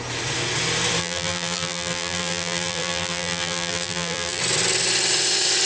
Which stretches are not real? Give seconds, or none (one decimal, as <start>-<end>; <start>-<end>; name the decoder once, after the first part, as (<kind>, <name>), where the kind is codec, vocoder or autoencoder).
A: 1.0-4.4 (vocoder, BigVGAN v2)